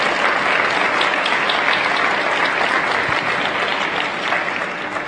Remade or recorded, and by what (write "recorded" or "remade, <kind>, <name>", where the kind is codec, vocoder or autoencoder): recorded